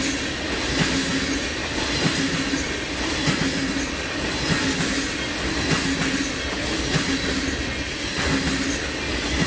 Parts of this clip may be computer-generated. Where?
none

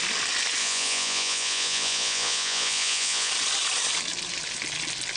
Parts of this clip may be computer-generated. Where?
0.6-3.3

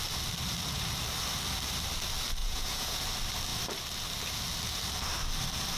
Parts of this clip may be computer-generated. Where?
2.4-3.0

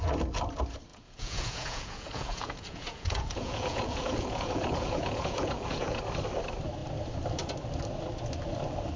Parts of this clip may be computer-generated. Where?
0.9-6.0